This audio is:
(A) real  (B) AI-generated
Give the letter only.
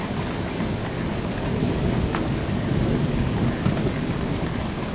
B